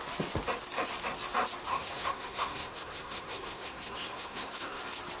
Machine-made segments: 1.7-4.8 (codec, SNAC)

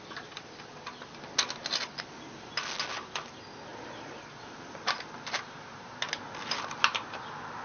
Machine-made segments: none

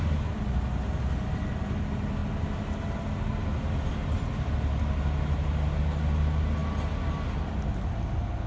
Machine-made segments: none

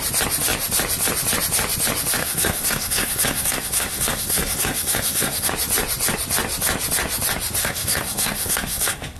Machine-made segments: 2.2-5.5 (codec, SNAC); 7.6-9.2

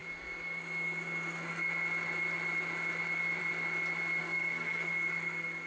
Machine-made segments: 4.2-4.9 (codec, SNAC)